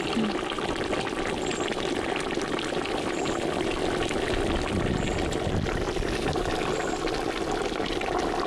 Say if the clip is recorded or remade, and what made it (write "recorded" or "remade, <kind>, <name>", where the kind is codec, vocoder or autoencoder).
recorded